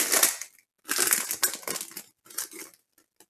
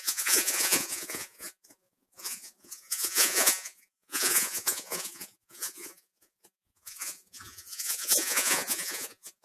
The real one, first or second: first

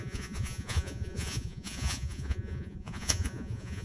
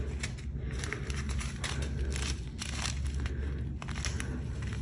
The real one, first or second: second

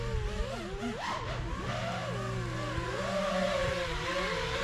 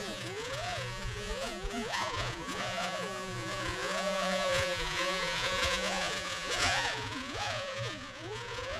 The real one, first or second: first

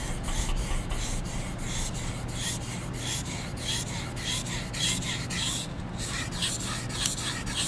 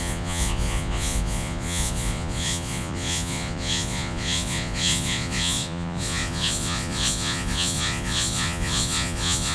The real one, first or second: first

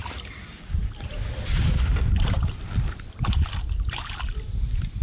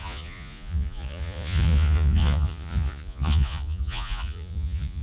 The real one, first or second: first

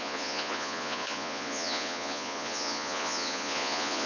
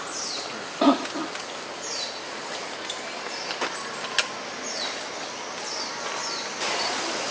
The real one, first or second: second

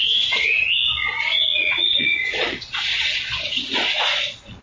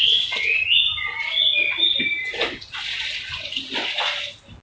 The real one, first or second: second